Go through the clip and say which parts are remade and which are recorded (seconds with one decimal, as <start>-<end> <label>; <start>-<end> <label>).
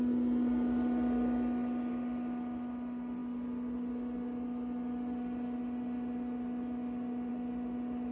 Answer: 0.0-8.1 recorded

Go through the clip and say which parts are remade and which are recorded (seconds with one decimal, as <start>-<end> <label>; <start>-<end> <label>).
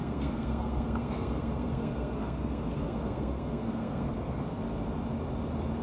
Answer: 0.0-4.6 remade; 4.6-5.8 recorded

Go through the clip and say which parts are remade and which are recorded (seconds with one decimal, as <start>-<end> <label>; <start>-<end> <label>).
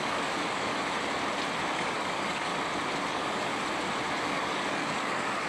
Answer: 0.0-0.7 remade; 0.7-1.7 recorded; 1.7-2.5 remade; 2.5-3.1 recorded; 3.1-3.5 remade; 3.5-4.2 recorded; 4.2-5.5 remade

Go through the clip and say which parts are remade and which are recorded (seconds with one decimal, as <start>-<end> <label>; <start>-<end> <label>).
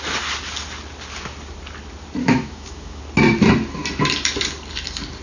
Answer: 0.0-2.2 recorded; 2.2-3.0 remade; 3.0-5.2 recorded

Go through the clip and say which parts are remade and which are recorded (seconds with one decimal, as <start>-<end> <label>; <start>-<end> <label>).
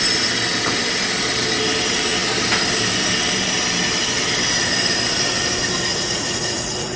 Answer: 0.0-5.9 recorded; 5.9-7.0 remade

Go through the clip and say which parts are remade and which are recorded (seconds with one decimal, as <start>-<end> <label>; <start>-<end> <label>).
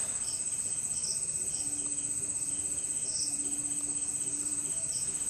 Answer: 0.0-5.3 recorded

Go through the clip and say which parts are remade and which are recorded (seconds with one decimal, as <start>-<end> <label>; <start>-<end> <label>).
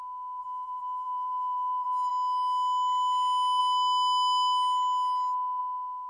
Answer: 0.0-0.4 recorded; 0.4-2.1 remade; 2.1-6.1 recorded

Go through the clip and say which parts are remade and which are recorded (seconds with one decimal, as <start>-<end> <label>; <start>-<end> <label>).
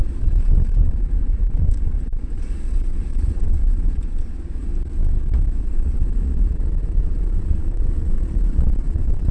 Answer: 0.0-4.7 remade; 4.7-5.6 recorded; 5.6-9.3 remade